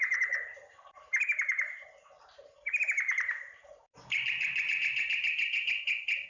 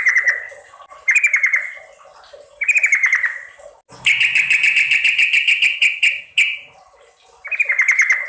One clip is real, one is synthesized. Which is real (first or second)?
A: second